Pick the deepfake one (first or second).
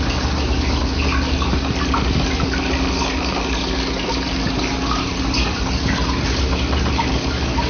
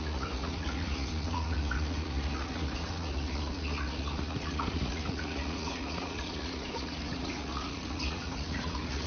second